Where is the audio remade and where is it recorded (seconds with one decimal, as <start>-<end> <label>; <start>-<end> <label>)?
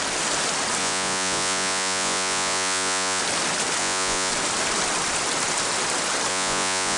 0.0-0.8 recorded; 0.8-3.2 remade; 3.2-3.8 recorded; 3.8-4.3 remade; 4.3-6.3 recorded; 6.3-7.0 remade